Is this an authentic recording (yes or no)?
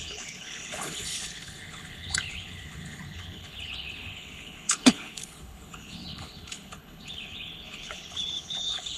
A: no